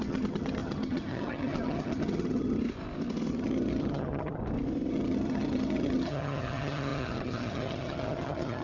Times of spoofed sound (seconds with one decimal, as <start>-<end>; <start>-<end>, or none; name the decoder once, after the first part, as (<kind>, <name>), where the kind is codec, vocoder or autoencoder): 0.0-2.6 (vocoder, HiFi-GAN); 3.3-4.4; 4.9-8.6